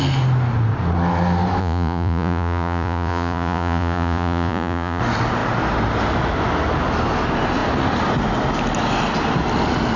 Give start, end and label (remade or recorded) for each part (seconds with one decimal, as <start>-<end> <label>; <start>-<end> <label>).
0.0-1.6 recorded; 1.6-5.0 remade; 5.0-10.0 recorded